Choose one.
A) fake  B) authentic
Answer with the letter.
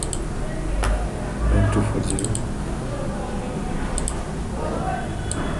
B